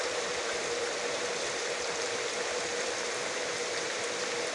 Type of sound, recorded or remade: remade